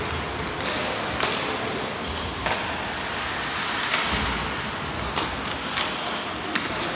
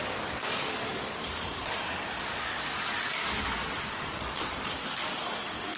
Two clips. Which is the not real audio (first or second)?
second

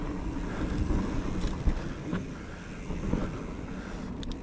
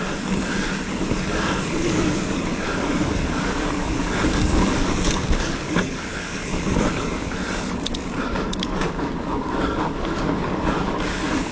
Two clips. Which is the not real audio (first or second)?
second